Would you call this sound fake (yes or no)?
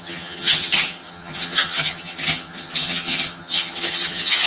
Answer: yes